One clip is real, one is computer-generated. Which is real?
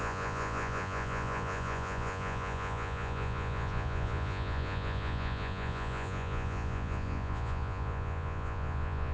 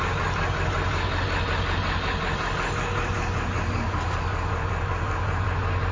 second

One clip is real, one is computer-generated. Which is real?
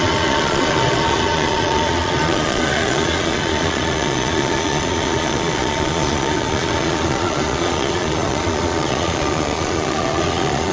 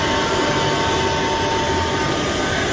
second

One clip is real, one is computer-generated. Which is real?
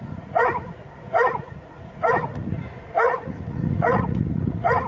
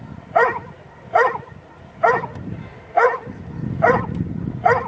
second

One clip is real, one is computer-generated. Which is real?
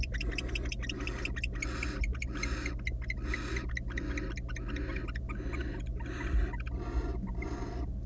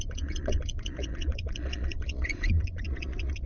first